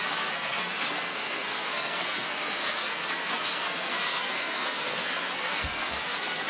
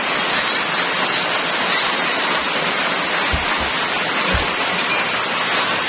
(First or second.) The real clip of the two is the second